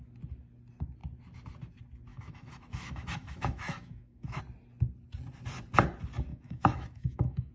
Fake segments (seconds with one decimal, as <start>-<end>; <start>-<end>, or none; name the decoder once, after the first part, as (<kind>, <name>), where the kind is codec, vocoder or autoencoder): 2.1-4.4 (autoencoder, DAC-VAE); 6.3-7.5